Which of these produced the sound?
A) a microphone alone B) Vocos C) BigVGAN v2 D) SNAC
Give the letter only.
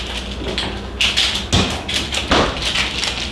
A